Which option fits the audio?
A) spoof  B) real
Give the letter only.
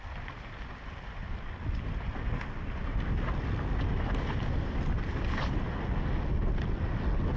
B